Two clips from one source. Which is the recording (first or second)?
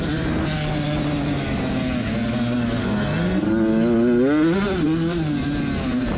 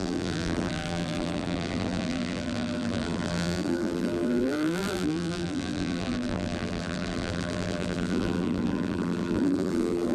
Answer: first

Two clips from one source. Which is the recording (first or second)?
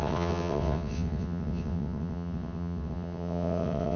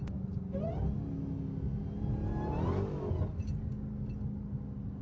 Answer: second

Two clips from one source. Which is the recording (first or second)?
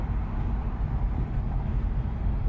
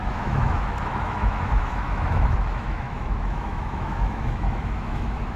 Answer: first